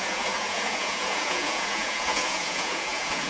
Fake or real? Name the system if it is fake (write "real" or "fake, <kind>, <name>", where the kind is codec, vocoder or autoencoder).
fake, vocoder, Vocos